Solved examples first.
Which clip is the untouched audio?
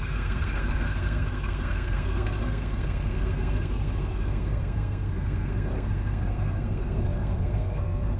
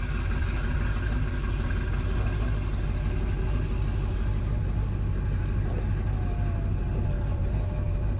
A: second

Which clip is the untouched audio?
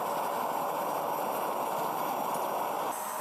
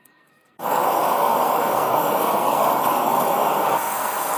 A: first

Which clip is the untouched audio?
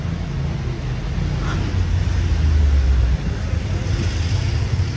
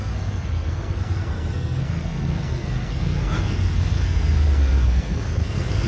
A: first